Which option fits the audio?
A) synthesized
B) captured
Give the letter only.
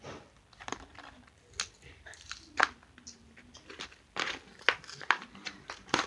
A